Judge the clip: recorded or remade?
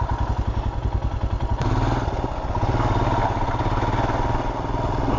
recorded